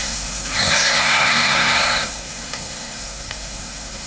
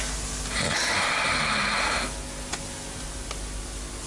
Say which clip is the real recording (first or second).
second